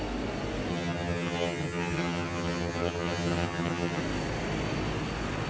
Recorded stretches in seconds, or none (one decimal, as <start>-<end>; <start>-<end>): 0.0-0.7; 4.0-5.5